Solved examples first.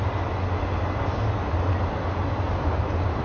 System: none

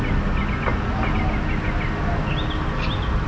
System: none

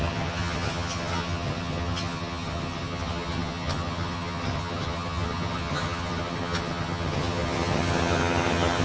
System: vocoder, HiFi-GAN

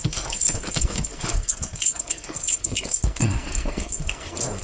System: codec, SNAC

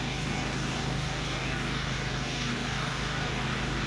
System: codec, DAC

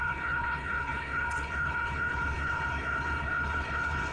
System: codec, HILCodec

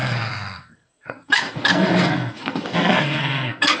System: codec, SNAC